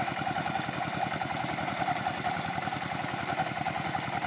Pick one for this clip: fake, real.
real